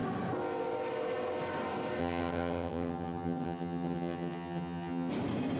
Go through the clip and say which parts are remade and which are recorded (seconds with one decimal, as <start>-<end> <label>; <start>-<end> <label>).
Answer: 0.0-2.0 recorded; 2.0-5.1 remade; 5.1-5.6 recorded